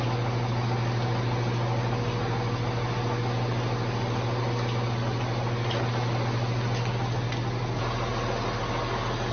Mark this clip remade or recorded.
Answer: recorded